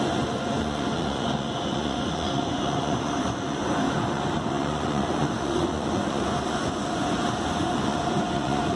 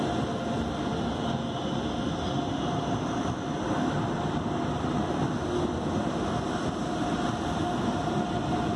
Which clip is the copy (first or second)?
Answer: first